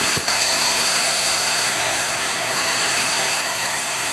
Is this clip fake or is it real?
fake